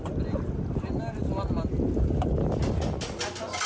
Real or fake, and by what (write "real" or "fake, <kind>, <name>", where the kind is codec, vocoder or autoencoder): real